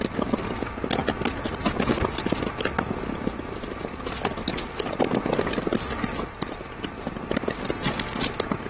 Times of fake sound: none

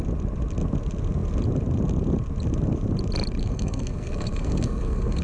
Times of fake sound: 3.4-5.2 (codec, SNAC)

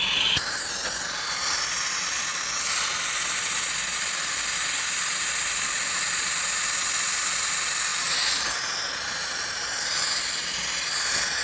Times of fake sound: 7.9-8.5 (vocoder, BigVGAN v2); 9.2-10.2